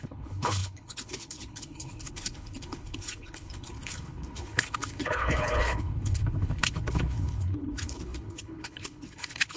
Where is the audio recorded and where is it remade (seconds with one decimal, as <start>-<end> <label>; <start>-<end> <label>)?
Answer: 0.0-9.6 remade